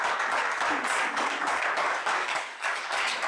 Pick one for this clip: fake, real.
fake